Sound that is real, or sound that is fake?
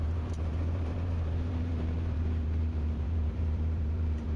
fake